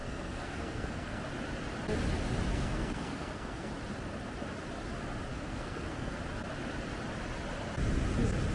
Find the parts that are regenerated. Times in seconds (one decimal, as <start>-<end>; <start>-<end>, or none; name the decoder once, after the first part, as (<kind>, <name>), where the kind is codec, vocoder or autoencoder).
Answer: 0.0-1.2 (codec, SNAC); 2.5-3.7; 5.3-6.2